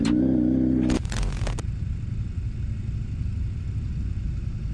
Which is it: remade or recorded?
recorded